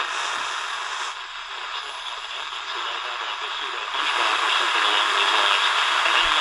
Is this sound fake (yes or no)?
no